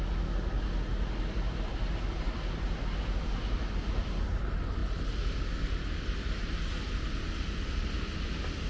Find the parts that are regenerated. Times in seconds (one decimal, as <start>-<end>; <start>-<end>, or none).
none